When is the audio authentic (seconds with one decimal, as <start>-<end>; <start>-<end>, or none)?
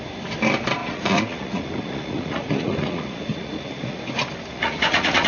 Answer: 0.0-0.8; 4.0-4.5